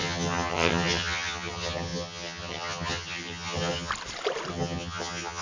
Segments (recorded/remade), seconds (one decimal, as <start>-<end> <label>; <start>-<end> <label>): 0.0-3.9 remade; 3.9-4.5 recorded; 4.5-5.4 remade